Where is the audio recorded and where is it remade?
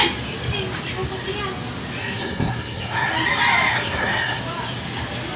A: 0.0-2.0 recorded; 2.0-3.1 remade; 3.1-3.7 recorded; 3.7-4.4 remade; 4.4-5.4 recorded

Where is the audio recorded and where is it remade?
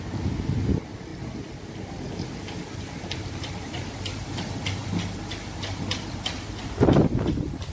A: 0.0-7.7 recorded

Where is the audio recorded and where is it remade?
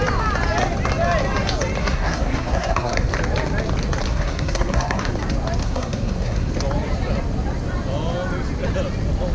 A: 0.0-1.8 recorded; 1.8-3.1 remade; 3.1-4.1 recorded; 4.1-5.1 remade; 5.1-5.6 recorded; 5.6-6.5 remade; 6.5-9.3 recorded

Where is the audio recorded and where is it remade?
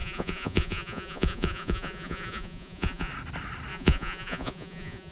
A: 0.0-3.1 remade; 3.1-3.7 recorded; 3.7-5.1 remade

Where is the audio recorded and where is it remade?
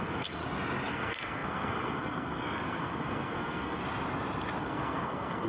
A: 0.0-0.4 remade; 0.4-0.9 recorded; 0.9-3.8 remade; 3.8-4.6 recorded; 4.6-5.5 remade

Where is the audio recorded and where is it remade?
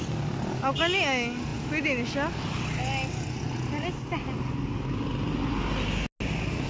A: 0.0-6.7 recorded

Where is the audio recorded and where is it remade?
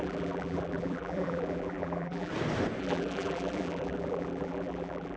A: 0.0-2.3 remade; 2.3-2.8 recorded; 2.8-5.2 remade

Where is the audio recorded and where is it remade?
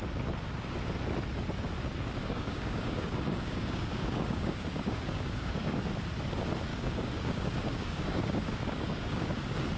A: 0.0-2.2 recorded; 2.2-5.8 remade; 5.8-6.7 recorded; 6.7-9.3 remade; 9.3-9.8 recorded